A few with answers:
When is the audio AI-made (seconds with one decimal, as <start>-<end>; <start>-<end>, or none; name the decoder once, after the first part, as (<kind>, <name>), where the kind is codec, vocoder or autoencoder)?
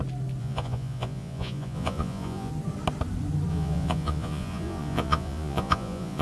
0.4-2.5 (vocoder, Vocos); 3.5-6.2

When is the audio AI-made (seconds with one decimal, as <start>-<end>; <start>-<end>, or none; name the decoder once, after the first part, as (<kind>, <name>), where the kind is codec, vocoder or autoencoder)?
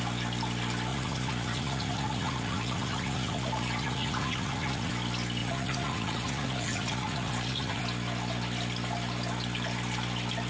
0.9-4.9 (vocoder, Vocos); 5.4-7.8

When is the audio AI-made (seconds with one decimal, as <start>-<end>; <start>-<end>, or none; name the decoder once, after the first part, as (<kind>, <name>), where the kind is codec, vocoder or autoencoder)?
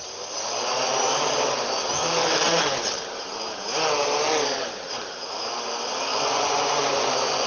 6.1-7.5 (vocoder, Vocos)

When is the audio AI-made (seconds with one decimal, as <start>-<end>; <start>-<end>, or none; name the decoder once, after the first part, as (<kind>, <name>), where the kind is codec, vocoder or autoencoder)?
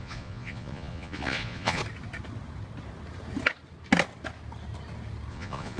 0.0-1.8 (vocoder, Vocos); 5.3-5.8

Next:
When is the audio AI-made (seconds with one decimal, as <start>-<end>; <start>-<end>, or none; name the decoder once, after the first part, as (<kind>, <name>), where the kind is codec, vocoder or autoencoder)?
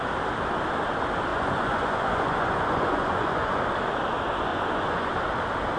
1.3-3.6 (vocoder, Vocos); 4.5-5.1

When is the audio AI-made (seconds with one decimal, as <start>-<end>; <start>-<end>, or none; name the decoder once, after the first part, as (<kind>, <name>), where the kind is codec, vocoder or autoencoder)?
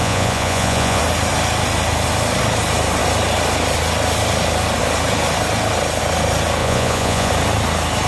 0.0-1.0 (vocoder, Vocos); 6.6-7.3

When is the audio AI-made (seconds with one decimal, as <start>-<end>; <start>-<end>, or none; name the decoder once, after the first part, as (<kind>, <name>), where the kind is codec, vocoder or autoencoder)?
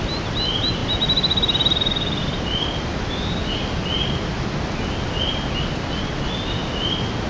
none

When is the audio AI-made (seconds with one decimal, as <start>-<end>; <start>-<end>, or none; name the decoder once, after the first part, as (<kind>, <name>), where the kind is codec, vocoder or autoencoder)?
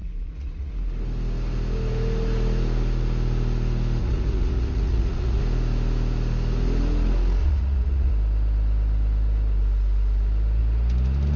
0.0-0.7 (vocoder, Vocos); 4.0-5.4; 7.4-8.1